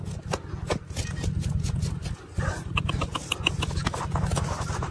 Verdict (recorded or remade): recorded